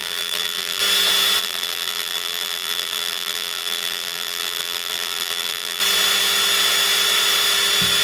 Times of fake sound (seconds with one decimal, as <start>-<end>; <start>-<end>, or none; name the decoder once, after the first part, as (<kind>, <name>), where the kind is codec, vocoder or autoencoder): 0.0-0.8 (vocoder, BigVGAN v2); 1.4-5.8

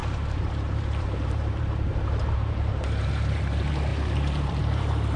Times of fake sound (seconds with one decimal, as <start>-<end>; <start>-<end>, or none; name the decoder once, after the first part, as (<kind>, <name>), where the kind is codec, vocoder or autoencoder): 0.0-5.2 (vocoder, BigVGAN v2)